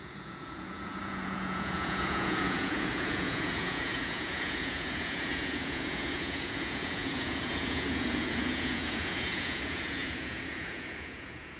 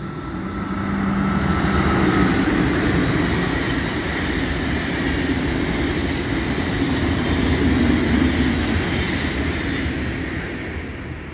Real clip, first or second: second